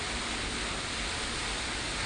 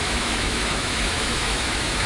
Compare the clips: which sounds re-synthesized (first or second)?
second